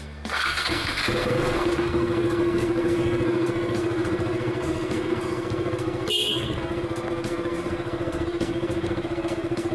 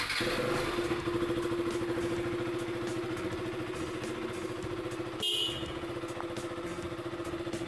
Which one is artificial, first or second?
first